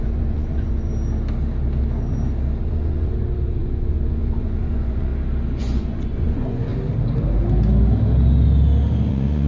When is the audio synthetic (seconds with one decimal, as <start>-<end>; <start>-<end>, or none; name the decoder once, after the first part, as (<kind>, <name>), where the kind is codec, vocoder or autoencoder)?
0.0-0.9 (vocoder, Vocos); 2.6-5.1; 5.6-6.7; 9.1-9.5